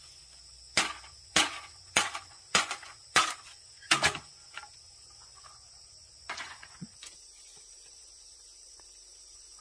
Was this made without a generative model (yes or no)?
no